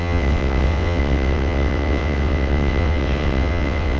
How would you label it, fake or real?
fake